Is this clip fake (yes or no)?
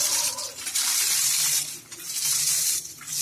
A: yes